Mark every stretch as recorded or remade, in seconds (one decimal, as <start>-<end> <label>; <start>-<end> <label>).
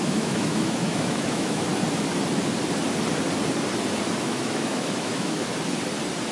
0.0-1.7 remade; 1.7-4.2 recorded; 4.2-5.5 remade; 5.5-6.3 recorded